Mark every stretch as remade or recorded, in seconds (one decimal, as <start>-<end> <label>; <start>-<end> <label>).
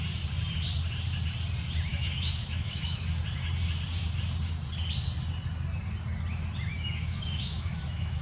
0.0-1.9 recorded; 1.9-3.0 remade; 3.0-6.7 recorded; 6.7-8.2 remade